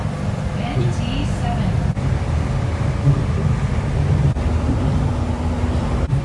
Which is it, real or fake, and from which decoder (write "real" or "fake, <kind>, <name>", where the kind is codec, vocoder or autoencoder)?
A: real